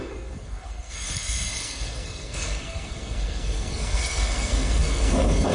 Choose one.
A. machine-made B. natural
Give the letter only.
A